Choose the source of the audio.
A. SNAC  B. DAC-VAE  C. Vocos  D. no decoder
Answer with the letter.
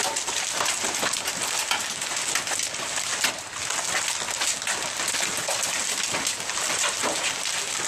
D